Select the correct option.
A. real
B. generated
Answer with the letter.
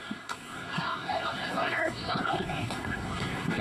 B